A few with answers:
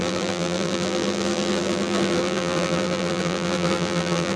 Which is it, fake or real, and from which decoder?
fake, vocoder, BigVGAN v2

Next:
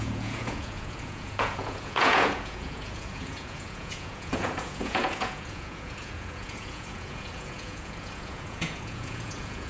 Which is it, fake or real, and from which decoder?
fake, vocoder, Vocos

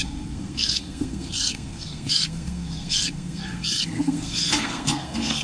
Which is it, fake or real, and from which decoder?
fake, codec, SNAC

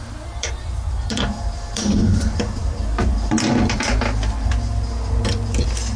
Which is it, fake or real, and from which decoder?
fake, vocoder, BigVGAN v2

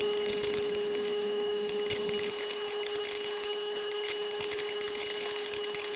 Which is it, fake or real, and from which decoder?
fake, codec, HILCodec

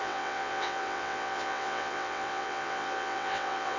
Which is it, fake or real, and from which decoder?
fake, vocoder, WaveNeXt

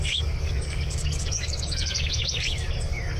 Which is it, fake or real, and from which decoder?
fake, codec, DAC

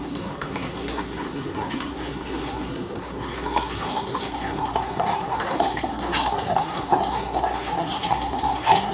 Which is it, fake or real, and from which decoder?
fake, codec, SNAC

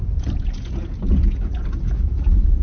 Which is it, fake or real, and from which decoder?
fake, vocoder, Vocos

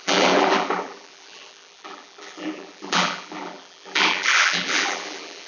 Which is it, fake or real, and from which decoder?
fake, vocoder, BigVGAN v2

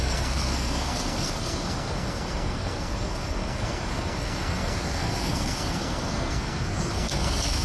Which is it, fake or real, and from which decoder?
fake, codec, SNAC